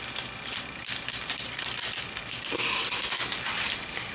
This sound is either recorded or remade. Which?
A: recorded